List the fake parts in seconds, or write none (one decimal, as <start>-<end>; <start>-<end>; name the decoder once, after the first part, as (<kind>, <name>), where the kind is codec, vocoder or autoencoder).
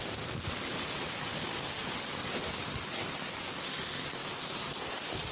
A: none